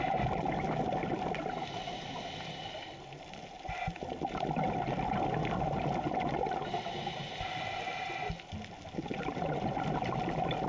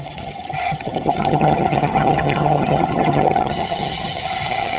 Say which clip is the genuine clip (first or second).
first